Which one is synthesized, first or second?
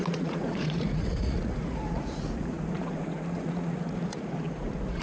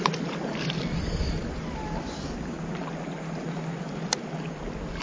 first